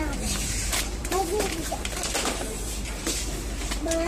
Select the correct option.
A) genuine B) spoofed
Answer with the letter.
B